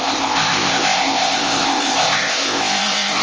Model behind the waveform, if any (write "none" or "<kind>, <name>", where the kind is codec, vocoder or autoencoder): codec, ZipCodec